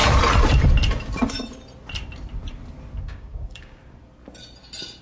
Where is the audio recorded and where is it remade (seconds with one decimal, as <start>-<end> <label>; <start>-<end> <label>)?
0.0-3.0 recorded; 3.0-3.8 remade; 3.8-5.0 recorded